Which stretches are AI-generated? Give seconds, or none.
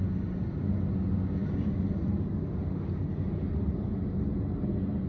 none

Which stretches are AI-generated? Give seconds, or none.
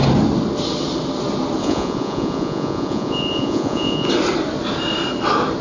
1.6-4.1 (vocoder, Vocos)